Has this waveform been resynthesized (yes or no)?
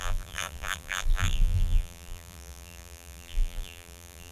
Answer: yes